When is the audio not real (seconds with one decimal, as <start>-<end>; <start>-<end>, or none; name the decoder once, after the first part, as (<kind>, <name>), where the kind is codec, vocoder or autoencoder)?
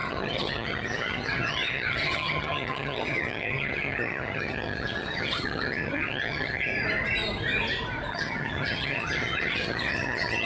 0.0-6.7 (vocoder, HiFi-GAN); 8.1-10.5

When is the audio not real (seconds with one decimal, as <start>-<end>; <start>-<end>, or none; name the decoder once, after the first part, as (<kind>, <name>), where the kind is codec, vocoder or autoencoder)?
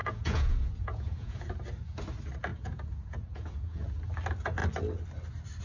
0.0-1.5 (vocoder, Vocos); 2.5-4.0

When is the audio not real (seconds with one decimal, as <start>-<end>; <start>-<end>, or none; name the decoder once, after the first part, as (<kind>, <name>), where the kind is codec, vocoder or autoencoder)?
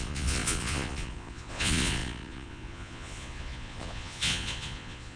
0.0-5.2 (vocoder, Vocos)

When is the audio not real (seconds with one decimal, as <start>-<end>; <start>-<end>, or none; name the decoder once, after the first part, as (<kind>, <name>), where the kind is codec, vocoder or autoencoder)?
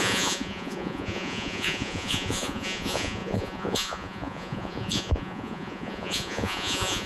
0.0-7.1 (vocoder, Vocos)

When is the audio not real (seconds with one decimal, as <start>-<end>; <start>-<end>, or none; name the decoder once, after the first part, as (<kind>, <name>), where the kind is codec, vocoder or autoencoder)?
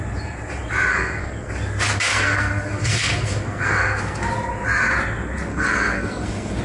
0.9-1.5 (codec, SNAC); 2.1-4.2; 5.5-6.6